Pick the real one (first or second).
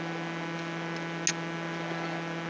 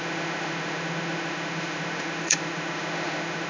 first